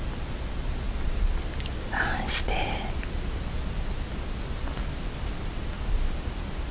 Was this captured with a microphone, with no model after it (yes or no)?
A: yes